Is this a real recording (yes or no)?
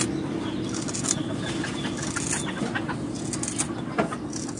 yes